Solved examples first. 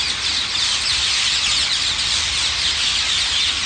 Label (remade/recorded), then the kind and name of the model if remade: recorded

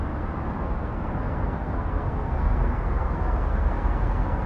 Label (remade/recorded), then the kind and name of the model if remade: remade, codec, SNAC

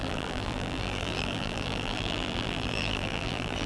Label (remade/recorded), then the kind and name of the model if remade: remade, vocoder, BigVGAN v2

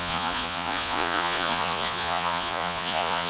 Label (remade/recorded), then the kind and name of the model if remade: remade, vocoder, Vocos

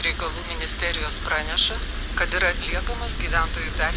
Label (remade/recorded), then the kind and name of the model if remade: recorded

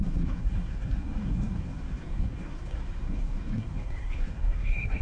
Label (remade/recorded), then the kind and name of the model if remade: remade, codec, SNAC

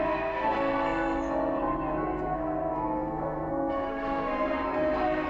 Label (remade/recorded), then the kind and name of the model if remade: remade, codec, SNAC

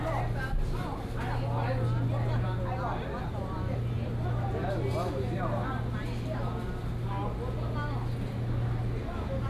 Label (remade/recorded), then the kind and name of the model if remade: recorded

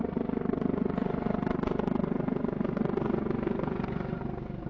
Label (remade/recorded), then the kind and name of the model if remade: recorded